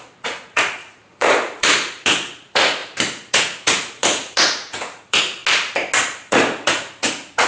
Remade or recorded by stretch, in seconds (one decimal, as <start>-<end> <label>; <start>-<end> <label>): 0.0-2.8 remade; 2.8-3.3 recorded; 3.3-5.4 remade; 5.4-6.3 recorded; 6.3-7.5 remade